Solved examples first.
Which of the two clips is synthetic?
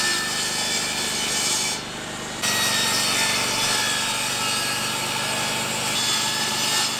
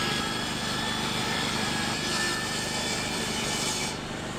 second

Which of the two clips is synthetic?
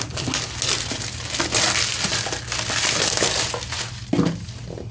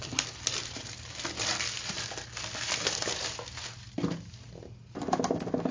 second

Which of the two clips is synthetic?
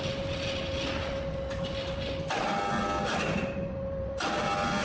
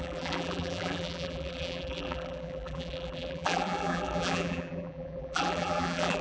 second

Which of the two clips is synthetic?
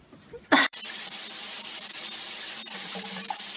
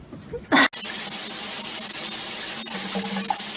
first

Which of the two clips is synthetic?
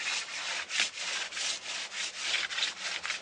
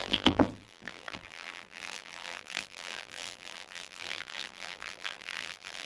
second